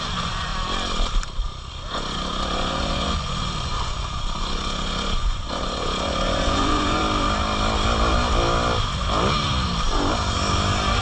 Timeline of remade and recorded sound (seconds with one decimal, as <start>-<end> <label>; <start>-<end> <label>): 0.0-0.5 remade; 0.5-1.7 recorded; 1.7-7.0 remade; 7.0-11.0 recorded